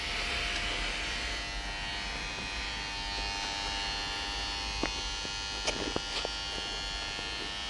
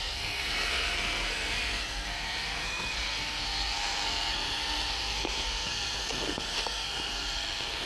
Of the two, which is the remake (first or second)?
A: second